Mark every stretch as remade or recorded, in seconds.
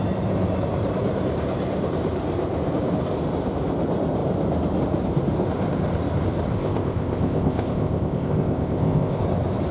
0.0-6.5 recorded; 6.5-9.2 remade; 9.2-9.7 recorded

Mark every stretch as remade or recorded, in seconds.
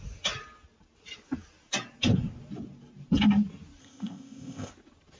0.0-3.8 recorded; 3.8-4.7 remade; 4.7-5.2 recorded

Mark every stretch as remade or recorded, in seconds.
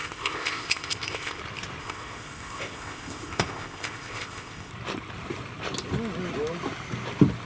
0.0-1.4 remade; 1.4-1.8 recorded; 1.8-4.7 remade; 4.7-7.5 recorded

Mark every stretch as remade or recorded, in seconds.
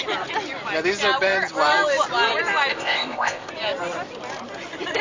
0.0-2.7 recorded; 2.7-3.5 remade; 3.5-5.0 recorded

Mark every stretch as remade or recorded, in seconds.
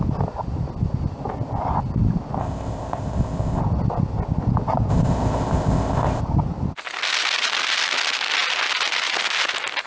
0.0-2.4 recorded; 2.4-3.6 remade; 3.6-4.9 recorded; 4.9-6.2 remade; 6.2-9.9 recorded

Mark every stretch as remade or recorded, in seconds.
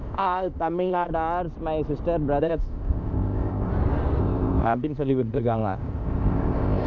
0.0-1.1 remade; 1.1-2.4 recorded; 2.4-3.7 remade; 3.7-4.2 recorded; 4.2-6.9 remade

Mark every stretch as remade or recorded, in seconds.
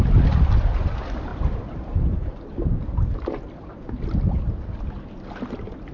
0.0-5.9 recorded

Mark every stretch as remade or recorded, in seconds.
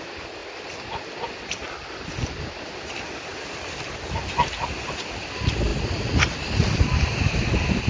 0.0-7.9 recorded